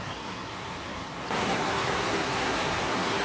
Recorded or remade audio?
remade